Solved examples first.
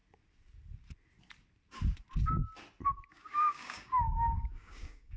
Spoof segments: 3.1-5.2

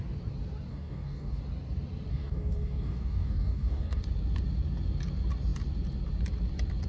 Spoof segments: 0.7-1.4; 2.1-4.0